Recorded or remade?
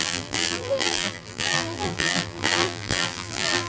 remade